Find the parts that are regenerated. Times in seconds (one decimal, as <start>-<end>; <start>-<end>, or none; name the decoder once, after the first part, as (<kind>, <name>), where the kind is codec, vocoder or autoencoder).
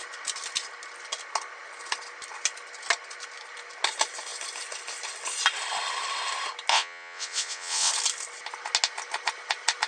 6.7-7.9 (vocoder, WaveNeXt)